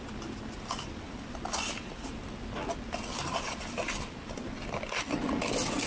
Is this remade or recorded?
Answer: recorded